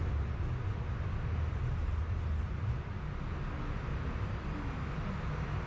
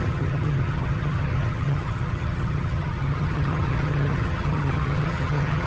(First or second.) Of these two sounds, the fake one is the second